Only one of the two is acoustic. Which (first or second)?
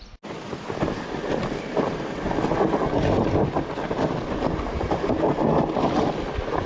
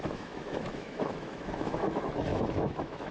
first